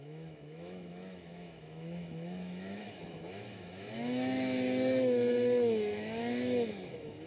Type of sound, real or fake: fake